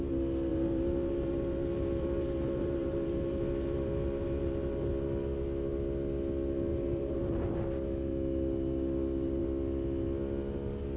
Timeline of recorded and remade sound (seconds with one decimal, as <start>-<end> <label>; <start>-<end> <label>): 0.0-0.5 recorded; 0.5-4.9 remade; 4.9-6.7 recorded; 6.7-7.5 remade; 7.5-11.0 recorded